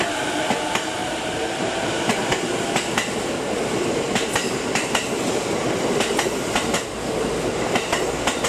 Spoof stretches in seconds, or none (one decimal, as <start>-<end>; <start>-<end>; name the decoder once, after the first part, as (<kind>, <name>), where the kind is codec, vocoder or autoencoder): 1.0-5.2 (vocoder, BigVGAN v2)